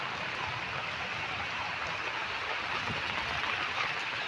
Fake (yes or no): no